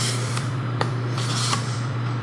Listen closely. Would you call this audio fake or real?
fake